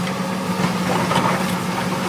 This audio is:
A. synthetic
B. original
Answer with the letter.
B